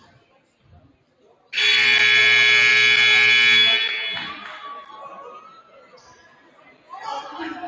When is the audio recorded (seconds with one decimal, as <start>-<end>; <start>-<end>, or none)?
0.0-7.7